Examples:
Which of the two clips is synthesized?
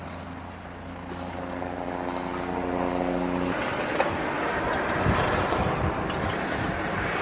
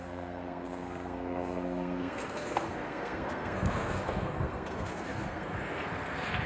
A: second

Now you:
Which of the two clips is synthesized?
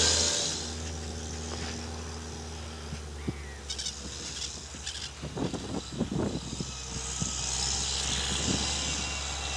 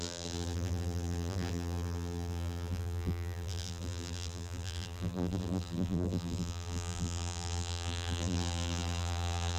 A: second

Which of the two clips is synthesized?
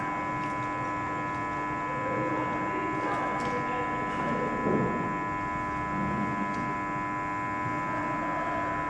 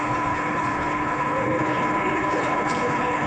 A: second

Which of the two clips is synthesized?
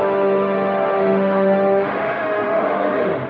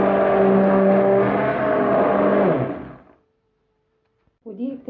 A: first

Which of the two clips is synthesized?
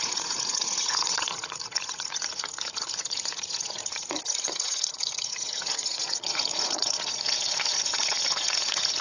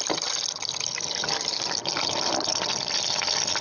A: first